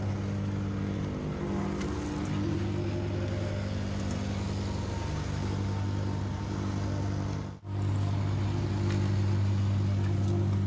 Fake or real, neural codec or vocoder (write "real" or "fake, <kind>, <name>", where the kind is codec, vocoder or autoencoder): real